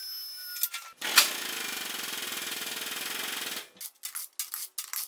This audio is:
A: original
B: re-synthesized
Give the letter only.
A